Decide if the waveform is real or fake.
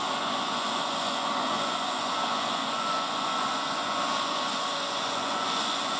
fake